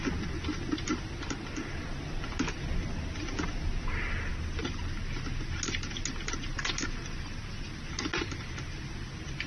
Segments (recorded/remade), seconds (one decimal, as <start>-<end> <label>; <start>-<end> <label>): 0.0-9.5 recorded